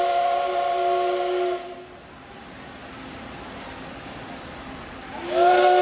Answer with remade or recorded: recorded